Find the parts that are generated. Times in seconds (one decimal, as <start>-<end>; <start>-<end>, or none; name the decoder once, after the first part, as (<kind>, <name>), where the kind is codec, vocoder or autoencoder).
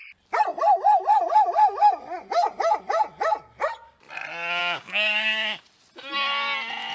4.6-5.6 (codec, DAC)